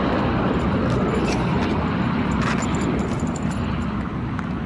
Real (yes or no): yes